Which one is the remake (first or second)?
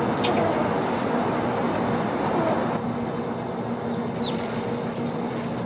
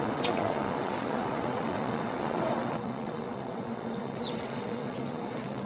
second